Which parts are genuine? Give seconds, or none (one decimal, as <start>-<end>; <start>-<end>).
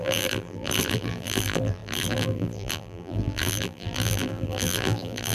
none